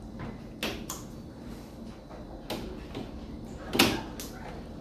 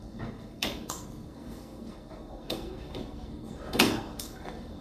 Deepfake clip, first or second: second